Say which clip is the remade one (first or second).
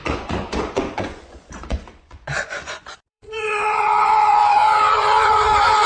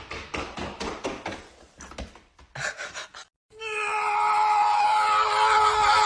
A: first